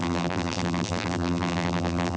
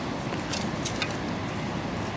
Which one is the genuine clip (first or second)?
second